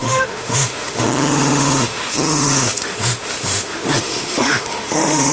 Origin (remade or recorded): remade